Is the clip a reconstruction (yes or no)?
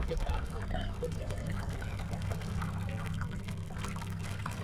yes